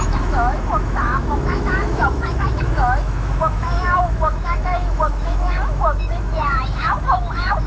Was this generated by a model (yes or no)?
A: yes